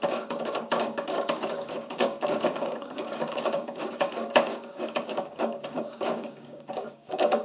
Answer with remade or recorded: remade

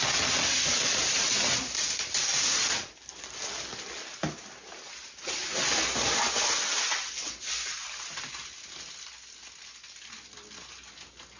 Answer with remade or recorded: recorded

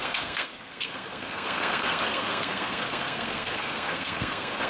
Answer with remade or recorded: remade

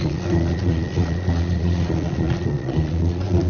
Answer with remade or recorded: remade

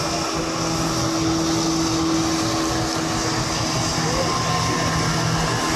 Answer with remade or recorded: recorded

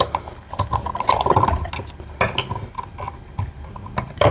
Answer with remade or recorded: recorded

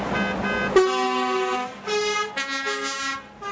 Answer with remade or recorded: recorded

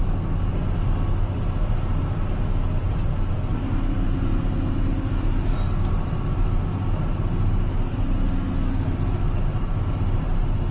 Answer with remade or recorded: recorded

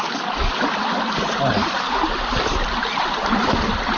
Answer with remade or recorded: recorded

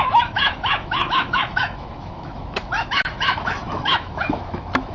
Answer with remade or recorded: remade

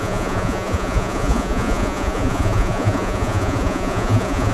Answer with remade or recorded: remade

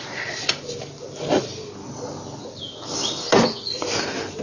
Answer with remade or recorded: recorded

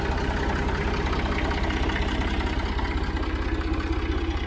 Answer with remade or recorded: recorded